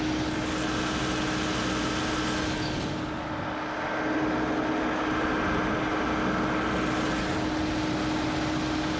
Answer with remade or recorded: recorded